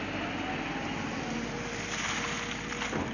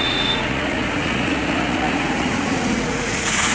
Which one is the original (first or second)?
first